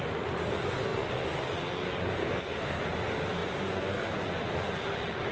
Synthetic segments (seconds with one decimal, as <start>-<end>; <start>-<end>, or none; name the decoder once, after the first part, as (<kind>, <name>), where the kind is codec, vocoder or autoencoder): 2.2-2.8 (codec, SNAC)